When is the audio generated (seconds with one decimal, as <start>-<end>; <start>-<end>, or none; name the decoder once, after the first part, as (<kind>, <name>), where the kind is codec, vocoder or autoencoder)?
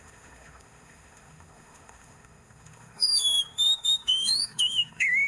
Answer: 0.0-5.3 (autoencoder, DAC-VAE)